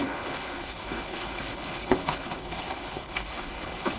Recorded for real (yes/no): no